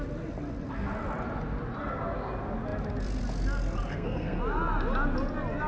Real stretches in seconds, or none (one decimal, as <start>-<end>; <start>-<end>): 0.0-3.9; 4.4-5.7